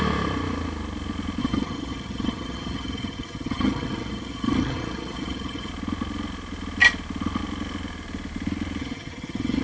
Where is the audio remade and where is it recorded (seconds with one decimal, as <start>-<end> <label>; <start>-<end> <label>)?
0.0-1.4 recorded; 1.4-5.7 remade; 5.7-8.8 recorded; 8.8-9.6 remade